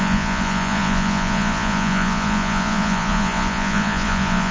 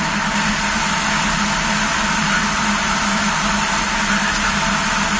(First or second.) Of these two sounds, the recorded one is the second